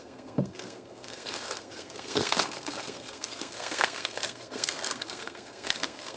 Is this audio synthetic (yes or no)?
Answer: yes